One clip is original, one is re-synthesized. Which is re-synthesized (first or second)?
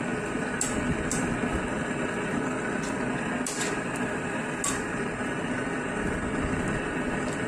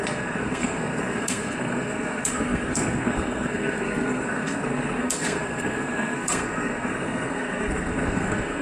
second